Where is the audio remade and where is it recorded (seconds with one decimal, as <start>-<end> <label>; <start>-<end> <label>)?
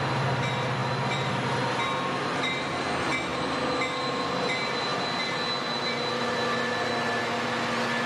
0.0-8.1 recorded